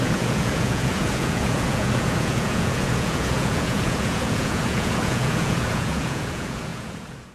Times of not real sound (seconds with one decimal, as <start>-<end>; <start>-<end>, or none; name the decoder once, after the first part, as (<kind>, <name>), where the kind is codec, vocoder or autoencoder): 0.0-7.3 (vocoder, Vocos)